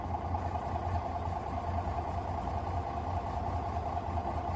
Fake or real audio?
real